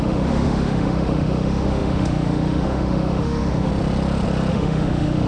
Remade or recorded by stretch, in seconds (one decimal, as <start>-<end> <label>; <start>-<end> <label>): 0.0-3.7 remade; 3.7-4.5 recorded; 4.5-5.3 remade